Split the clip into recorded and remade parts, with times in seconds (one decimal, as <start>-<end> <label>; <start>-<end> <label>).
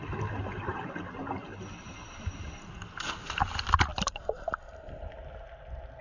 0.0-3.9 recorded; 3.9-4.5 remade; 4.5-6.0 recorded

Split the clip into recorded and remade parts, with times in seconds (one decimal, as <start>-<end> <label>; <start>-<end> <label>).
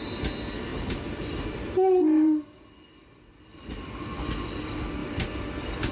0.0-0.7 recorded; 0.7-4.2 remade; 4.2-5.0 recorded; 5.0-5.9 remade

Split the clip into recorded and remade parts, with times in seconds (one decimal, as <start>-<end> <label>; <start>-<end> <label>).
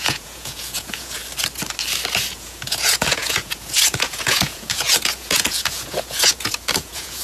0.0-1.2 remade; 1.2-2.3 recorded; 2.3-7.2 remade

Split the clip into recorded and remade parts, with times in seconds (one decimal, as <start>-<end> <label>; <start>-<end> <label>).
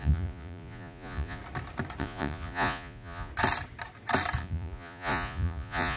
0.0-1.4 remade; 1.4-2.0 recorded; 2.0-3.3 remade; 3.3-4.4 recorded; 4.4-6.0 remade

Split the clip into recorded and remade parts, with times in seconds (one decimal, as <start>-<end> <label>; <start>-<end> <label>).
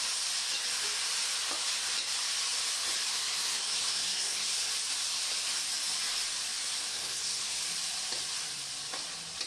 0.0-3.1 recorded; 3.1-4.7 remade; 4.7-6.9 recorded; 6.9-7.6 remade; 7.6-9.5 recorded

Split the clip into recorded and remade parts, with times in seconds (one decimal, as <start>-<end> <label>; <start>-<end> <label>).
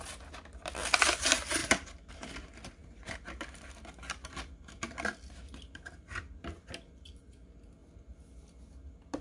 0.0-9.2 recorded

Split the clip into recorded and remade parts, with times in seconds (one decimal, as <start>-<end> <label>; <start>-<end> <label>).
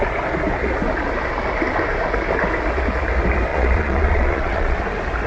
0.0-3.5 recorded; 3.5-4.8 remade; 4.8-5.3 recorded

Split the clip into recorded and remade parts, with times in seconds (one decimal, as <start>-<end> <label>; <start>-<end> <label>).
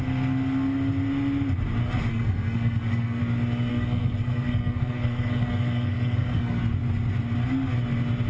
0.0-2.1 recorded; 2.1-3.2 remade; 3.2-3.7 recorded; 3.7-6.6 remade; 6.6-8.3 recorded